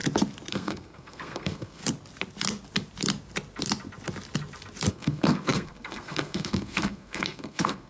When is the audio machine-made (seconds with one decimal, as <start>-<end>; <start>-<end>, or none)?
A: 0.5-1.8; 4.9-7.9

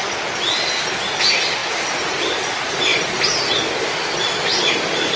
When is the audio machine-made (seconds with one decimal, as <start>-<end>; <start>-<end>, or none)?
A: none

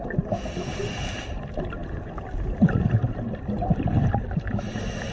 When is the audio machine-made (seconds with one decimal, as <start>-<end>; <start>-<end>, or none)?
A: none

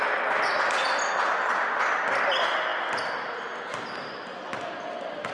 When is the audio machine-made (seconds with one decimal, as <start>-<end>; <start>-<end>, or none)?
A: none

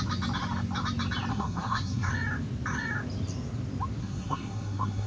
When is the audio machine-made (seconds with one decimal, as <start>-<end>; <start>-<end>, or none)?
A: 1.3-2.1; 4.0-5.1

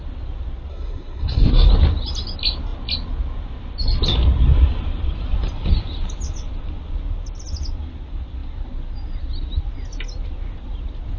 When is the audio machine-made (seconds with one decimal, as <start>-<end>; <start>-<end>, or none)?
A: 0.7-1.7

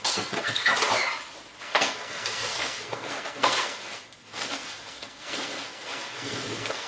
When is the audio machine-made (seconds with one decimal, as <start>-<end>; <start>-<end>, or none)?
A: 0.0-0.7; 1.6-6.9